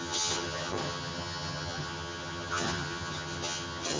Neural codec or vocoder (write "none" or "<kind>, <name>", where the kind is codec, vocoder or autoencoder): vocoder, HiFi-GAN